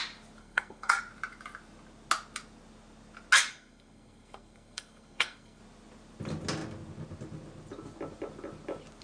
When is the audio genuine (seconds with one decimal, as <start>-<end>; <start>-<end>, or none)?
0.0-0.4; 1.0-3.5; 5.6-9.0